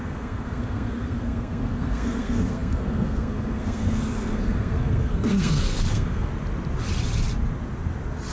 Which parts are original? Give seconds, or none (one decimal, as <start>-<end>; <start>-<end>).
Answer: 6.3-8.3